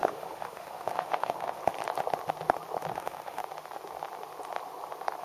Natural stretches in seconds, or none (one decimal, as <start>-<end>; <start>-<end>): 1.6-2.9; 3.4-5.2